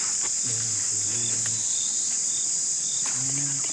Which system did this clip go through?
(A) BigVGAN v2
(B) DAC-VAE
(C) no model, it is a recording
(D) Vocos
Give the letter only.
C